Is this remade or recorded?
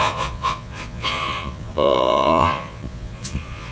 remade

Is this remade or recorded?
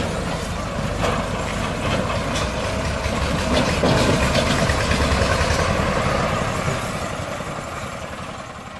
recorded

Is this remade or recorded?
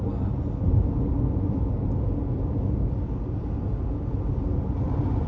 recorded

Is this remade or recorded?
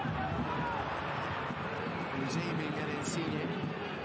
recorded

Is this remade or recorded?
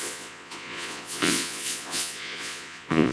remade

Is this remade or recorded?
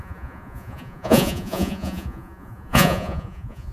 remade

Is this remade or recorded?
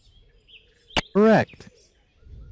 recorded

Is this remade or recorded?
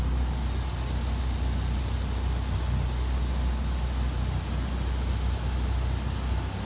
recorded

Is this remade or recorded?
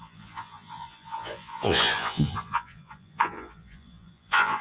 remade